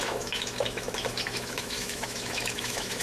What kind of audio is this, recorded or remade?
remade